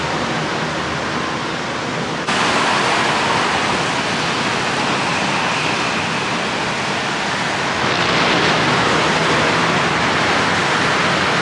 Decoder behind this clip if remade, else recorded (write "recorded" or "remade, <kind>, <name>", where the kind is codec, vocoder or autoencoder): recorded